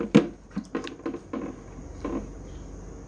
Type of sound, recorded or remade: recorded